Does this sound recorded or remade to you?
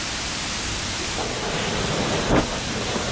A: recorded